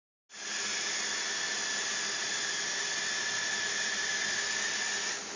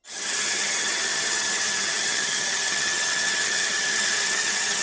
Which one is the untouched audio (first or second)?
first